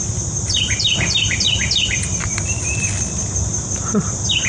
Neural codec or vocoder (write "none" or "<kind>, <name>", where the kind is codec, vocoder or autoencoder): none